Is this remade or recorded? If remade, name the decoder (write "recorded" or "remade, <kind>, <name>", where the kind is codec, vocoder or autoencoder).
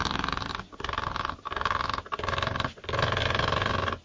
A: recorded